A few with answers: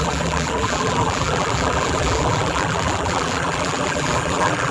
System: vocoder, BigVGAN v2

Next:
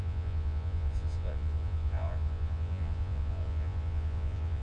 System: vocoder, Vocos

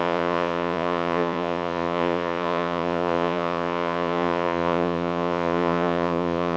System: vocoder, Vocos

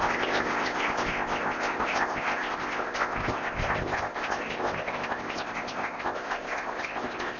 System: codec, ZipCodec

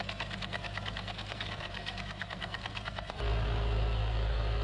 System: codec, SNAC